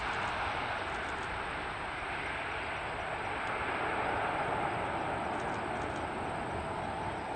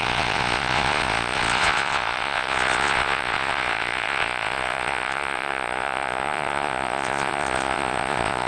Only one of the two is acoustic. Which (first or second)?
first